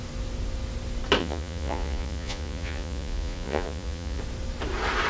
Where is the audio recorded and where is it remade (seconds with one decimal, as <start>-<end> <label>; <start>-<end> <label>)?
0.0-1.2 recorded; 1.2-4.2 remade; 4.2-5.1 recorded